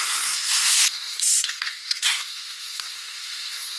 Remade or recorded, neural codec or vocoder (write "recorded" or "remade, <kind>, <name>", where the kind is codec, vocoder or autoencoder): remade, codec, SNAC